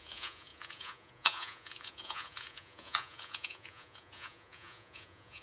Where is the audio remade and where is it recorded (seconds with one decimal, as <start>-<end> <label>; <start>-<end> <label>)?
0.0-5.4 remade